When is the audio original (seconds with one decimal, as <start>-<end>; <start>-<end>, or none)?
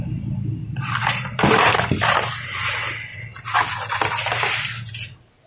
0.0-5.5